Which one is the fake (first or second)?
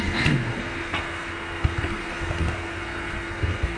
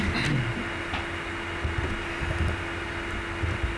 first